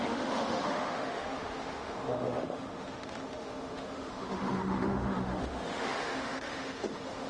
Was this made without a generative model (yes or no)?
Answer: no